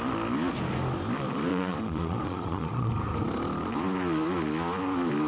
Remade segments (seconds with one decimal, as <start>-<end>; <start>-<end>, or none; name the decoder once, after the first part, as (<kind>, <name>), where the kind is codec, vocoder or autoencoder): 1.5-2.9 (vocoder, Vocos)